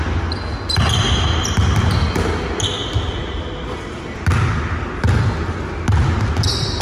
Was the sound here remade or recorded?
recorded